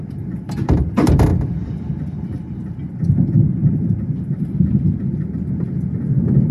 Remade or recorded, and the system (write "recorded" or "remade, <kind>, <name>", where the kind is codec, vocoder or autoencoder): recorded